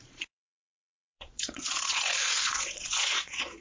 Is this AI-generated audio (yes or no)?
yes